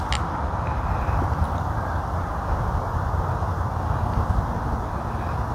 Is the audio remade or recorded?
recorded